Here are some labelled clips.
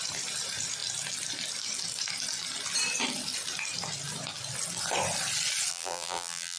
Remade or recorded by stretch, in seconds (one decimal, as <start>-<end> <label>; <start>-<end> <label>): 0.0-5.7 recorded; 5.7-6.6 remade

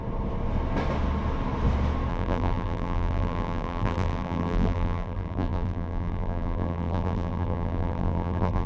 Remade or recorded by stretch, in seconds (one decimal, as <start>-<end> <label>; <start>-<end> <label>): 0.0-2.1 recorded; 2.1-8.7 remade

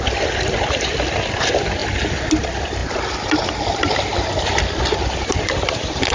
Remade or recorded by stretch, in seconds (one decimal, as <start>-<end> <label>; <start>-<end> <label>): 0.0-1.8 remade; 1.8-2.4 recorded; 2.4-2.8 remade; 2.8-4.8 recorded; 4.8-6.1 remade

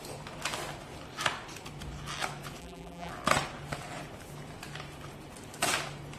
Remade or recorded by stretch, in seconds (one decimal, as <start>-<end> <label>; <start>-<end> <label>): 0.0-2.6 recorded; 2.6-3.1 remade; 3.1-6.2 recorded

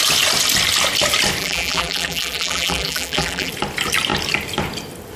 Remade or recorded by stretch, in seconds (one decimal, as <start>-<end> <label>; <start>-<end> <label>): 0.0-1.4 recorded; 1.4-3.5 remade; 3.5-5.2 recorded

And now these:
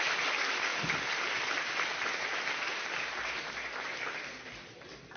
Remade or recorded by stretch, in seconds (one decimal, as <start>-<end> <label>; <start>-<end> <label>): 0.0-0.7 recorded; 0.7-3.5 remade; 3.5-5.2 recorded

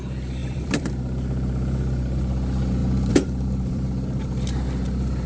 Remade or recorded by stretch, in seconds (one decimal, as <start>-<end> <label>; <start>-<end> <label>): 0.0-0.4 recorded; 0.4-0.9 remade; 0.9-2.8 recorded; 2.8-4.2 remade; 4.2-5.3 recorded

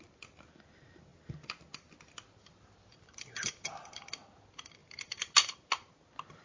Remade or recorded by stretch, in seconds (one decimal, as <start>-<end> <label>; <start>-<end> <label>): 0.0-4.8 recorded; 4.8-5.5 remade; 5.5-6.4 recorded